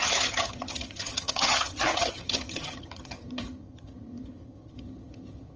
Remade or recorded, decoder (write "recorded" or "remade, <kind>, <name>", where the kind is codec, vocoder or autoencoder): remade, vocoder, HiFi-GAN